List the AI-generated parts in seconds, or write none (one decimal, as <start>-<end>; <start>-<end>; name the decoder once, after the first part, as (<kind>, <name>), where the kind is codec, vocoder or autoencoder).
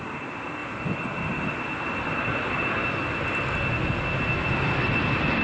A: 0.0-0.6 (vocoder, BigVGAN v2); 2.1-2.8; 5.0-5.4